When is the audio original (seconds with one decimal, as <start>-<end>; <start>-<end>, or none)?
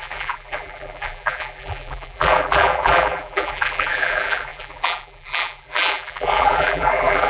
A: none